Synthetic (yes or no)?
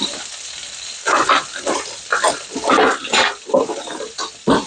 no